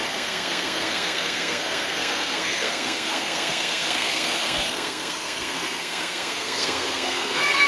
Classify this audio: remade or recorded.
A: remade